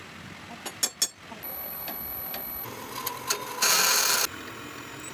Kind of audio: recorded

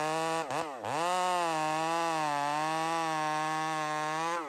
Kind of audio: recorded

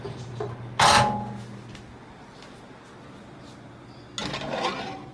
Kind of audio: recorded